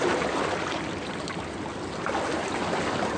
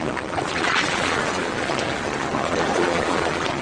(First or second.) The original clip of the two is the first